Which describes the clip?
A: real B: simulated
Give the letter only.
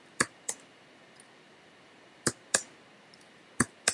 B